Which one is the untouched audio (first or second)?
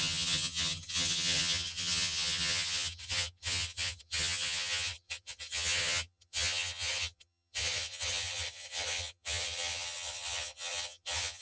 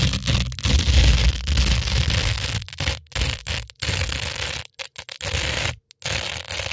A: second